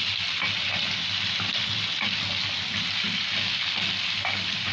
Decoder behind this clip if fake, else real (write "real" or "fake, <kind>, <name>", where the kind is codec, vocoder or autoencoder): real